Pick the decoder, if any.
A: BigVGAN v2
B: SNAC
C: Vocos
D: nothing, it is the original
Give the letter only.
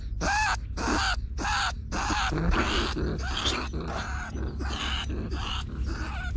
D